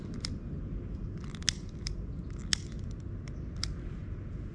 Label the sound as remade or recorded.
recorded